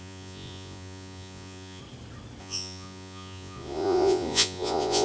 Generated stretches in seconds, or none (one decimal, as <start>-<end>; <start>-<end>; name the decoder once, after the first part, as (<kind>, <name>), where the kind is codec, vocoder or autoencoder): 0.0-1.8 (vocoder, Vocos); 2.4-5.0